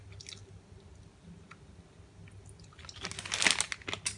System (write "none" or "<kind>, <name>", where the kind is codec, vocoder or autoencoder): none